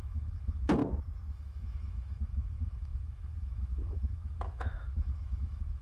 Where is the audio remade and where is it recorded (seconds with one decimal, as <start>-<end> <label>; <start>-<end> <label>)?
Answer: 0.0-0.8 remade; 0.8-1.3 recorded; 1.3-5.8 remade

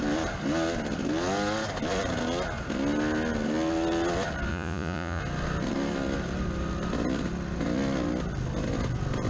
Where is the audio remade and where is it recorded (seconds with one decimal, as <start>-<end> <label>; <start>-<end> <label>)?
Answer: 0.0-4.5 recorded; 4.5-5.2 remade; 5.2-9.3 recorded

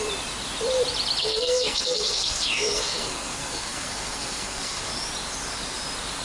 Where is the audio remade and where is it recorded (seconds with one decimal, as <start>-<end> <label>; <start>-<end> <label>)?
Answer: 0.0-1.2 recorded; 1.2-4.9 remade; 4.9-6.2 recorded

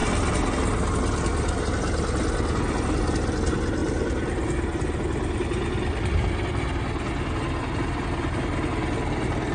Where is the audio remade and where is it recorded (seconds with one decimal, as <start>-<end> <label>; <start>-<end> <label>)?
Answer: 0.0-9.5 recorded